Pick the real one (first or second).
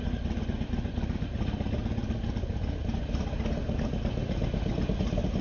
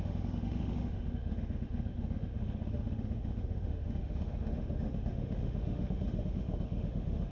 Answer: first